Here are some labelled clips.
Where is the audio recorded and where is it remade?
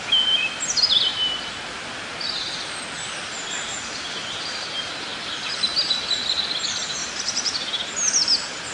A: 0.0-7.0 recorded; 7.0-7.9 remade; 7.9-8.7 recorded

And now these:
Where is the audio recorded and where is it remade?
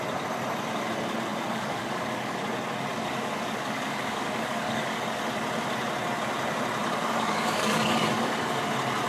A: 0.0-1.3 recorded; 1.3-2.4 remade; 2.4-2.9 recorded; 2.9-5.2 remade; 5.2-6.8 recorded; 6.8-8.6 remade; 8.6-9.1 recorded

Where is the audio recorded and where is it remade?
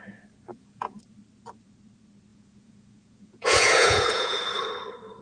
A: 0.0-0.5 recorded; 0.5-1.0 remade; 1.0-2.3 recorded; 2.3-4.4 remade; 4.4-5.2 recorded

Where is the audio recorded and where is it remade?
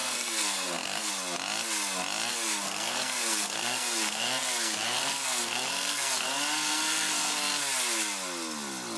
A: 0.0-1.1 remade; 1.1-2.3 recorded; 2.3-7.5 remade; 7.5-9.0 recorded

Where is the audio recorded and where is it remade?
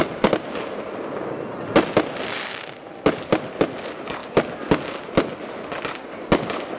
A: 0.0-6.8 recorded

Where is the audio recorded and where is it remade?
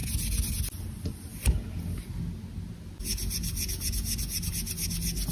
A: 0.0-5.3 recorded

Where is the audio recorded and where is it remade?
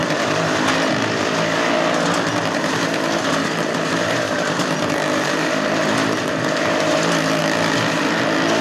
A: 0.0-0.9 remade; 0.9-2.3 recorded; 2.3-7.4 remade; 7.4-8.6 recorded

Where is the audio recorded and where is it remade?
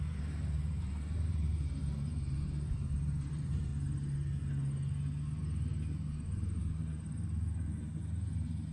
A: 0.0-3.7 remade; 3.7-6.1 recorded; 6.1-8.7 remade